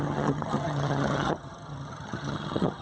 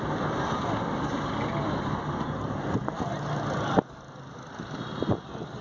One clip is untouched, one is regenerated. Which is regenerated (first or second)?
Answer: first